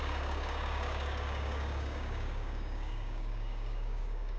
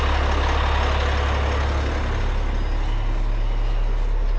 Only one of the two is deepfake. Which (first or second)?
first